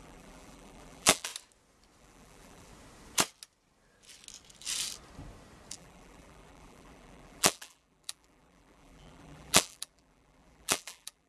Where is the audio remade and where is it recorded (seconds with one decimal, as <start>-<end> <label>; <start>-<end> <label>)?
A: 0.0-1.3 remade; 1.3-2.0 recorded; 2.0-2.7 remade; 2.7-5.7 recorded; 5.7-11.3 remade